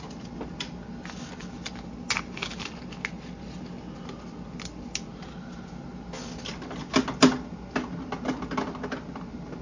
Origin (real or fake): real